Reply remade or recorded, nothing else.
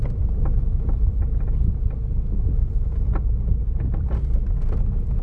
recorded